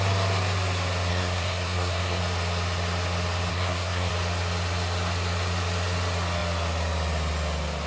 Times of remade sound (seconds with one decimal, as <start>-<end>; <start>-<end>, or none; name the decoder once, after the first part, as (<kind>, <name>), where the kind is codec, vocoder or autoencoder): 1.1-2.2 (codec, SNAC); 3.5-4.1